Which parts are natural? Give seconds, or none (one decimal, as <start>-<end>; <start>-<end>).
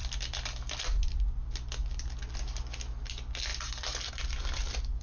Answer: 0.0-5.0